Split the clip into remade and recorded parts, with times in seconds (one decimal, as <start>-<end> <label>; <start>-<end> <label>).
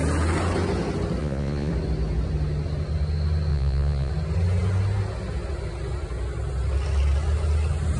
0.0-1.2 recorded; 1.2-1.7 remade; 1.7-3.5 recorded; 3.5-4.1 remade; 4.1-8.0 recorded